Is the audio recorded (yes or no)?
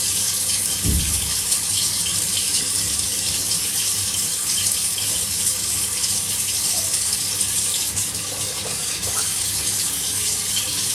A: no